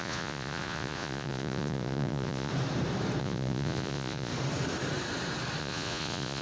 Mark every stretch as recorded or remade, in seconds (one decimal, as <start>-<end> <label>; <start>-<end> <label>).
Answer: 0.0-2.5 remade; 2.5-3.2 recorded; 3.2-4.3 remade; 4.3-5.6 recorded; 5.6-6.4 remade